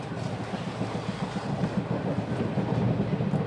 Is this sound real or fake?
real